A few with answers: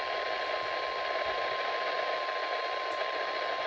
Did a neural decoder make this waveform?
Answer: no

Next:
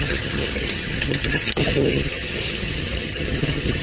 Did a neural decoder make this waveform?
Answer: yes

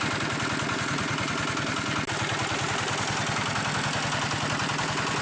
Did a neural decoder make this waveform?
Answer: no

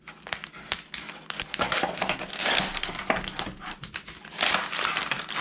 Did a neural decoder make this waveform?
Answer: no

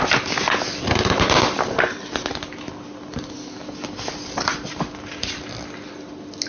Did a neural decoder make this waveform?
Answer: no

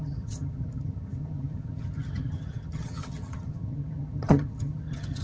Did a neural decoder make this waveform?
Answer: yes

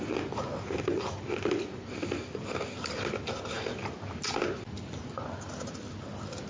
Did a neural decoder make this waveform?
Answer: no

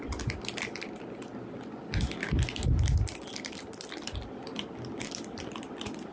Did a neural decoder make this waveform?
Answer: no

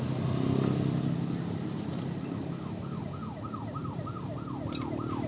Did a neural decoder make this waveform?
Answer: no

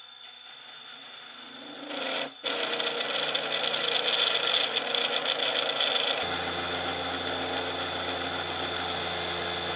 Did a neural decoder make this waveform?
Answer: no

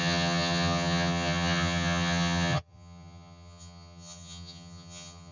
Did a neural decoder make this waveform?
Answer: yes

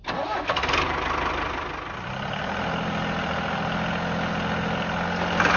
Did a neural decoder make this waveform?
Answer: no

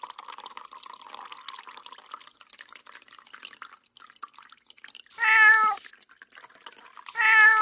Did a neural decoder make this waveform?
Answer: no